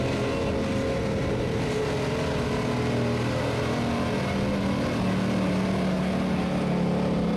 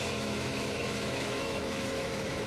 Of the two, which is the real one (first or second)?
first